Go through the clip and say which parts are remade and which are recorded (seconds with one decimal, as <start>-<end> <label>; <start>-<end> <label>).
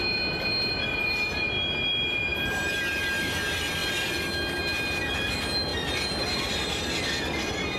0.0-7.8 recorded